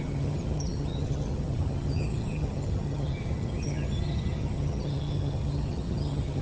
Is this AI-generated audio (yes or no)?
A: yes